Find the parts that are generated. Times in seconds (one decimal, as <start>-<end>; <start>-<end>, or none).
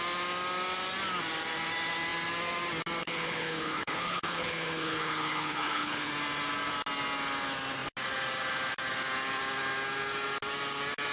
3.0-6.1